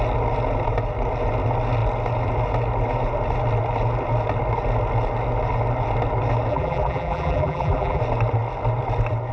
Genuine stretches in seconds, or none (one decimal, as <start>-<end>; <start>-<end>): 0.0-6.5; 8.0-9.3